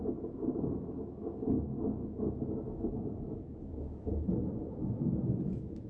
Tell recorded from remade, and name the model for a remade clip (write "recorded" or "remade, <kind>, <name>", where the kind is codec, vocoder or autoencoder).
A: remade, autoencoder, DAC-VAE